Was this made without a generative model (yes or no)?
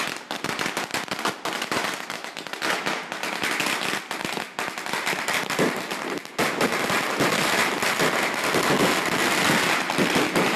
yes